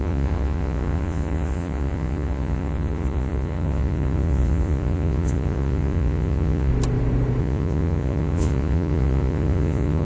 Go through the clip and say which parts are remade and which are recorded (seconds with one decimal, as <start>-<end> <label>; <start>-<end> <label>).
0.0-6.7 remade; 6.7-7.4 recorded; 7.4-10.0 remade